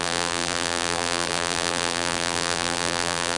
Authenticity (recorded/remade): remade